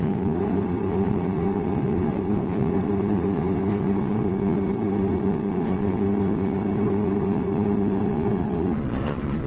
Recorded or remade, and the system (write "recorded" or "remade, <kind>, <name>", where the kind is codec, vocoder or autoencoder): remade, vocoder, Vocos